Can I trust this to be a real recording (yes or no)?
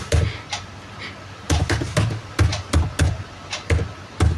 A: yes